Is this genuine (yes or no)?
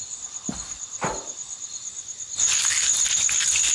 yes